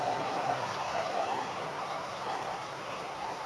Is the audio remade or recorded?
remade